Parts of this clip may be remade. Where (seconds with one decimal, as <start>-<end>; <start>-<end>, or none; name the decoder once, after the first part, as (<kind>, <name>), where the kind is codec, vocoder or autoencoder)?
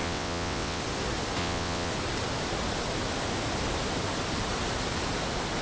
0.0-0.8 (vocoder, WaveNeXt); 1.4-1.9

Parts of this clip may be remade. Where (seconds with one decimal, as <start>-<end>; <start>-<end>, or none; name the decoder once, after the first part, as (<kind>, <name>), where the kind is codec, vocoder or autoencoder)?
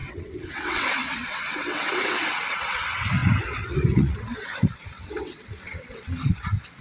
0.0-6.8 (vocoder, WaveNeXt)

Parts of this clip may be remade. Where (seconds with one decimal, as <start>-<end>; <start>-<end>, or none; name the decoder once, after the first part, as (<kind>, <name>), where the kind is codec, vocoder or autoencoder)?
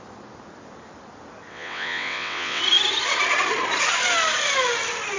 1.5-2.6 (vocoder, WaveNeXt)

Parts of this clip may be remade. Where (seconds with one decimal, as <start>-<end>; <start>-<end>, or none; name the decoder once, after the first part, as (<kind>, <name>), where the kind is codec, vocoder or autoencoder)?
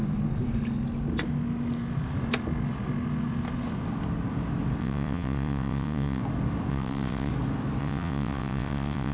4.8-6.2 (vocoder, WaveNeXt); 6.7-7.3; 7.8-9.1